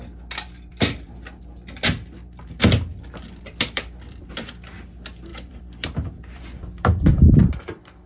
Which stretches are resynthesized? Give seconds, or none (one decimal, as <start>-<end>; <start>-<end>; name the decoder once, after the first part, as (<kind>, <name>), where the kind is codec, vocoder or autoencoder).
0.7-1.4 (vocoder, BigVGAN v2); 2.9-4.5; 5.3-8.1